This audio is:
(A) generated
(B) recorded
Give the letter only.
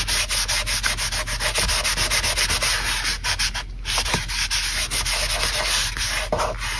B